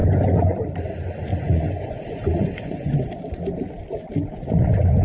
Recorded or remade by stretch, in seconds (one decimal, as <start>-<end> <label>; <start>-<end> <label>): 0.0-0.6 remade; 0.6-1.3 recorded; 1.3-3.2 remade; 3.2-5.0 recorded